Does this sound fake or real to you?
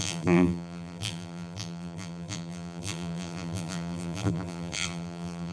fake